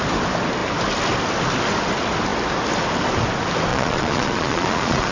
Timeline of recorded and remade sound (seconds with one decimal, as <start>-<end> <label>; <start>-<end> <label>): 0.0-3.7 recorded; 3.7-5.1 remade